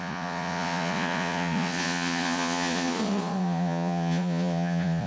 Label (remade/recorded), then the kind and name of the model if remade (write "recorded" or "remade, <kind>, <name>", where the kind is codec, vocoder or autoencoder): remade, vocoder, Vocos